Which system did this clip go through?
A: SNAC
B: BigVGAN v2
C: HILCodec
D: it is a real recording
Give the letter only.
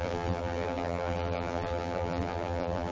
B